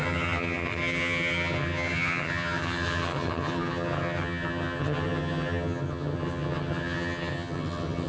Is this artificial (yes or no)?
yes